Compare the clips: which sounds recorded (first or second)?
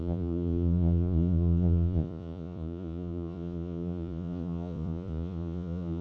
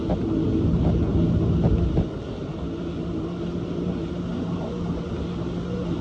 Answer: second